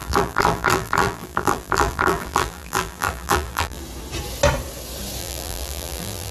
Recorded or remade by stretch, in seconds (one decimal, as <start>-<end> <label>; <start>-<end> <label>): 0.0-3.8 remade; 3.8-5.2 recorded; 5.2-6.3 remade